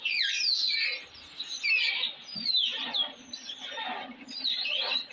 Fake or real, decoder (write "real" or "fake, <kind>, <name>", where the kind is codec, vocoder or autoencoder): real